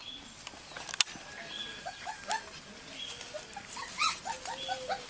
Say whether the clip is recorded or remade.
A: recorded